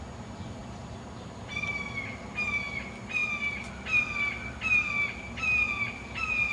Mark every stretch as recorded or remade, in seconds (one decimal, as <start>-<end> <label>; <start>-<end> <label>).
0.0-0.6 recorded; 0.6-1.6 remade; 1.6-6.5 recorded

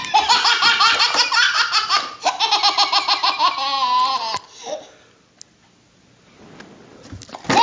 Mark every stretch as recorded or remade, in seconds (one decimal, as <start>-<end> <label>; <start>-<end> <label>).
0.0-7.6 recorded